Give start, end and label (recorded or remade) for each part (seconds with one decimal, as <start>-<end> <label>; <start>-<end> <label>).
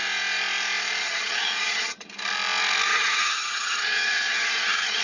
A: 0.0-1.0 recorded; 1.0-2.1 remade; 2.1-2.9 recorded; 2.9-5.0 remade